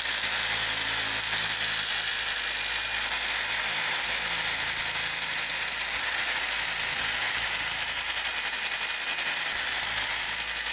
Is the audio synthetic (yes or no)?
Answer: no